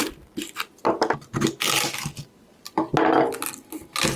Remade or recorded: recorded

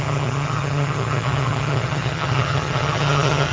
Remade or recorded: remade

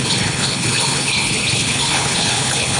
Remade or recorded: remade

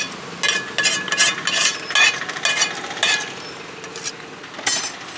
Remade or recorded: recorded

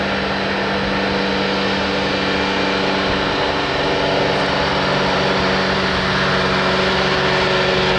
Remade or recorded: recorded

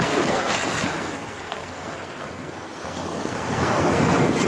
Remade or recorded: remade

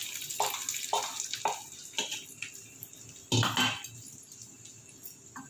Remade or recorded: recorded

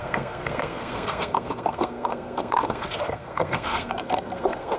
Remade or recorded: remade